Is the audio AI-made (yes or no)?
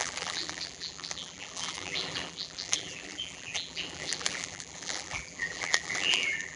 yes